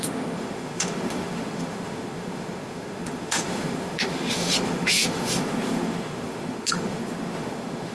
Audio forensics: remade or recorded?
remade